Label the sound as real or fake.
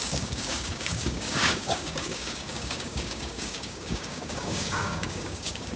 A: fake